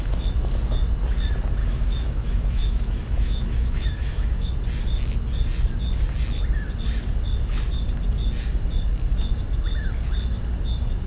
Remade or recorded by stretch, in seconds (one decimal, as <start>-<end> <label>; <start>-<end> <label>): 0.0-1.6 recorded; 1.6-4.5 remade; 4.5-11.1 recorded